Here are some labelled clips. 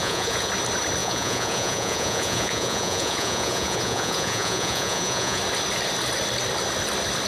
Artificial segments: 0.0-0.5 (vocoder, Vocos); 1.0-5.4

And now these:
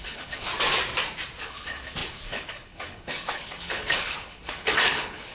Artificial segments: 0.0-0.5 (codec, HILCodec); 1.4-5.3

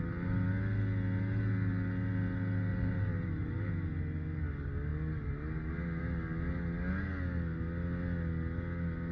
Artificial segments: 2.7-3.7 (vocoder, BigVGAN v2)

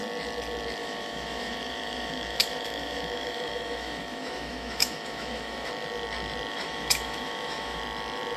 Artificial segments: 0.8-5.7 (autoencoder, DAC-VAE); 6.5-7.8

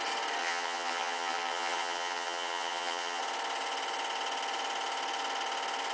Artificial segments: 0.4-3.2 (vocoder, HiFi-GAN)